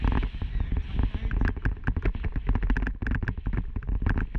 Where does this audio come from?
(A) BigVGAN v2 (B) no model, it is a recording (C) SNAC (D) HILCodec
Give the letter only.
B